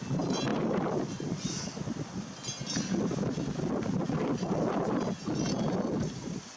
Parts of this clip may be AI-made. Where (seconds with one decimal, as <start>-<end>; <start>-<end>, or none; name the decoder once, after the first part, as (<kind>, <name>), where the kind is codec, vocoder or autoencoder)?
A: none